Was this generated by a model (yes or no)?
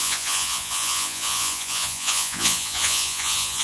yes